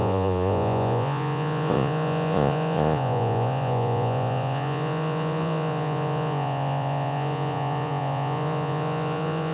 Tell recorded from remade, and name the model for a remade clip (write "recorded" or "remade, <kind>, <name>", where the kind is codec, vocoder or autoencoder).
remade, vocoder, Vocos